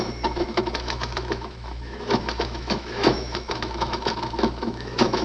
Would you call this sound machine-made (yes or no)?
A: yes